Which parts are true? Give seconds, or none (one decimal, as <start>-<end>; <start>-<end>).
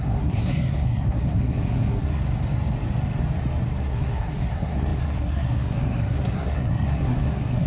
2.2-3.8